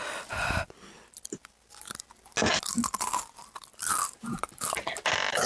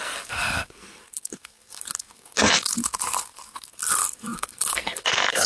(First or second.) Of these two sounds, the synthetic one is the second